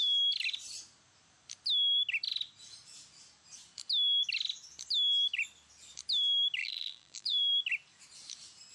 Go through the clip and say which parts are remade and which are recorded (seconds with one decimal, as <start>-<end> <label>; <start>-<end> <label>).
0.0-6.6 recorded; 6.6-7.5 remade; 7.5-8.7 recorded